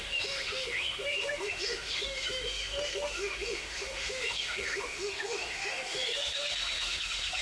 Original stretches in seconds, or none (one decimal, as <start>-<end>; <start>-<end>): none